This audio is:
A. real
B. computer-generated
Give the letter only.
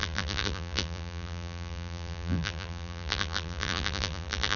B